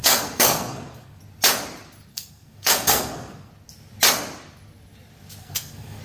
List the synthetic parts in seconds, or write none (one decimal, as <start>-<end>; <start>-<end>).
0.0-1.2; 2.1-3.5; 5.4-6.0